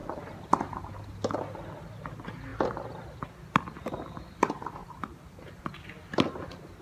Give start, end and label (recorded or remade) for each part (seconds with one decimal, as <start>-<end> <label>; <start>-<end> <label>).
0.0-4.8 recorded; 4.8-5.6 remade; 5.6-6.8 recorded

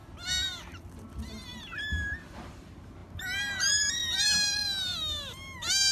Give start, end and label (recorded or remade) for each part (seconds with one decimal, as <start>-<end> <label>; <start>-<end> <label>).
0.0-1.5 recorded; 1.5-5.9 remade

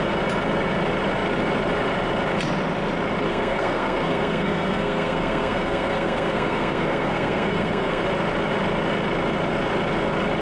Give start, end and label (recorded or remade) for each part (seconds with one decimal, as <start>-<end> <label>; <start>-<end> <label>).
0.0-3.3 recorded; 3.3-8.0 remade; 8.0-10.4 recorded